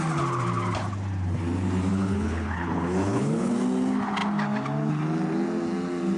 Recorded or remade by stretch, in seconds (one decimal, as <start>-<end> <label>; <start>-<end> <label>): 0.0-1.9 recorded; 1.9-3.5 remade; 3.5-6.2 recorded